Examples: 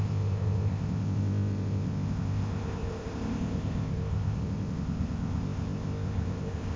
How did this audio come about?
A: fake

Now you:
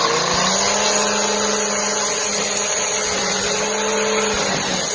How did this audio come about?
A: real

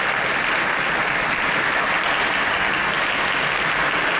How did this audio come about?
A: real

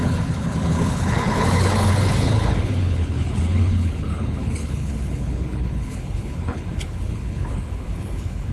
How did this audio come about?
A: fake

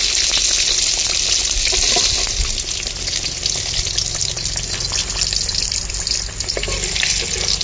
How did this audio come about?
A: real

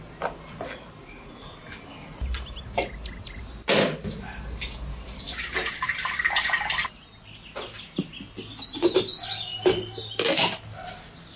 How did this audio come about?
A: real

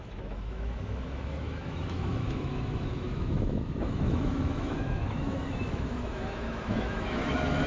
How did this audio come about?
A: fake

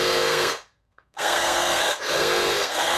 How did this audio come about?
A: fake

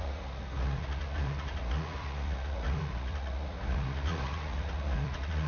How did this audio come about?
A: fake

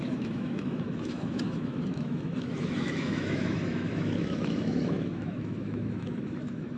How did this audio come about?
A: fake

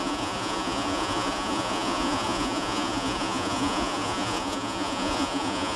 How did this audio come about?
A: fake